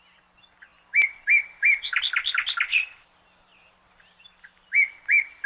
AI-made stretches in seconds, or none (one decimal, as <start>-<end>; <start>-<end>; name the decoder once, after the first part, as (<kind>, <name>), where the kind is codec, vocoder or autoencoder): 0.7-2.0 (vocoder, BigVGAN v2); 2.7-4.7